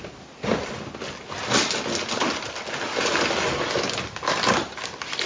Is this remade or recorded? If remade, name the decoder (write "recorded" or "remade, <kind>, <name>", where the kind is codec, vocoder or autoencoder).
recorded